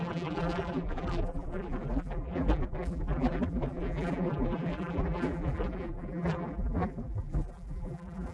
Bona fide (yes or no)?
no